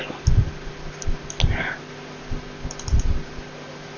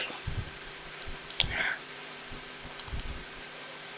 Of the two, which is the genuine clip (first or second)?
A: first